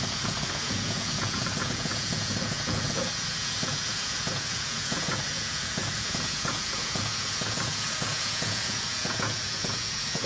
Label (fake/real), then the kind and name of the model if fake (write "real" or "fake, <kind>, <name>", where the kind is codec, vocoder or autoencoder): fake, vocoder, Vocos